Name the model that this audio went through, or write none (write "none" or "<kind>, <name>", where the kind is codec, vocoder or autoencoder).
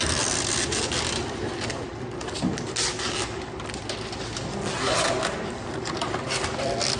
none